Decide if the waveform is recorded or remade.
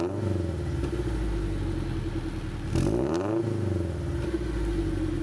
recorded